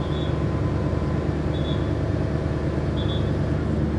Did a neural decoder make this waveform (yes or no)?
no